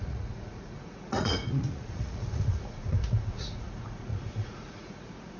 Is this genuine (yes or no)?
no